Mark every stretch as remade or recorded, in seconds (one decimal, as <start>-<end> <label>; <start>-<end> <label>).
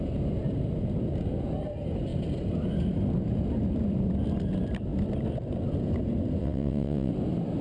0.0-6.4 recorded; 6.4-7.1 remade; 7.1-7.6 recorded